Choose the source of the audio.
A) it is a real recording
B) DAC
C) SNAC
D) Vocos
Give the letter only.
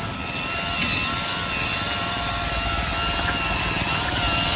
A